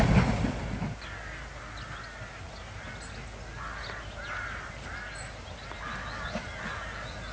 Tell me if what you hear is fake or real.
real